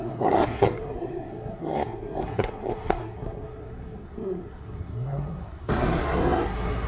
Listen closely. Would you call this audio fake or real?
fake